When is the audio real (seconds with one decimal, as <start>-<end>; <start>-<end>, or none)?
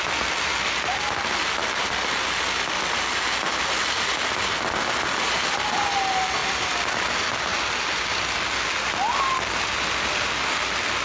0.0-11.0